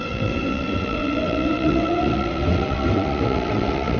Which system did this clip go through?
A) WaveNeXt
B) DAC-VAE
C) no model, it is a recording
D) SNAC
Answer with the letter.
A